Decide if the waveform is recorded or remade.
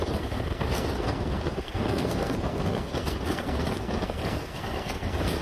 remade